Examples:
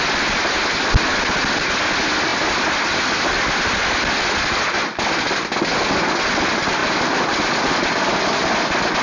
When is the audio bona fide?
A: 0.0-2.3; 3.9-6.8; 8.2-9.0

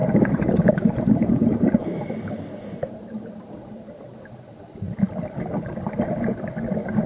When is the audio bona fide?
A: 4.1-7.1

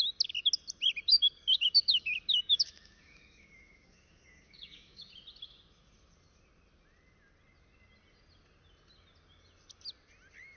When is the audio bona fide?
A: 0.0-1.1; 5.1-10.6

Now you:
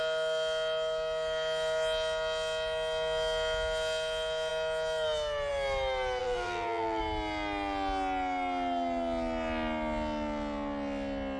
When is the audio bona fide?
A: 0.0-6.2; 7.0-11.4